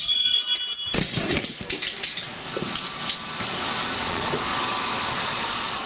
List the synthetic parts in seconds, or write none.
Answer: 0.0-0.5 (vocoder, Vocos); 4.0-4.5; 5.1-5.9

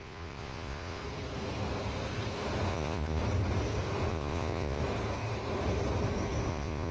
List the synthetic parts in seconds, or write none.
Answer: 0.0-1.0 (vocoder, Vocos); 2.7-3.2; 4.1-4.8; 6.5-6.9

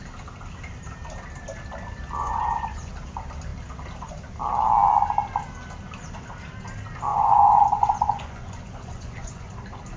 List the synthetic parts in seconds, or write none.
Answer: 2.2-2.9 (vocoder, Vocos); 7.1-9.5

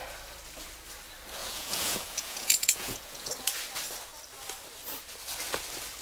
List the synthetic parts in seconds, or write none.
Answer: 1.4-3.3 (vocoder, Vocos)

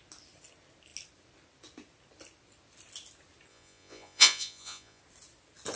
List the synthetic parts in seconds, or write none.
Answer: 3.5-5.0 (vocoder, Vocos)

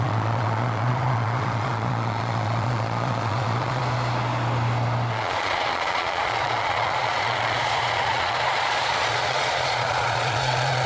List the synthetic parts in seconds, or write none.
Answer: 0.0-3.8 (vocoder, Vocos); 5.1-10.9